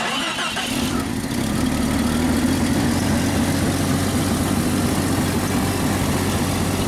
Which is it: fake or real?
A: real